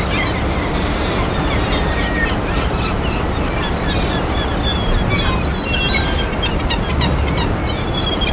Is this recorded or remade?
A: recorded